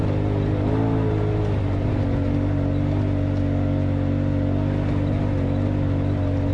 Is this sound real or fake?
real